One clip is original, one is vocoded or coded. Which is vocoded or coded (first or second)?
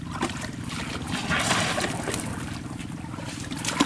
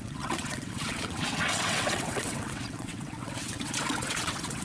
second